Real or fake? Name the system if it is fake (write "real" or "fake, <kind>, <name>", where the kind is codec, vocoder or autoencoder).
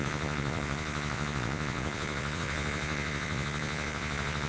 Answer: fake, vocoder, Vocos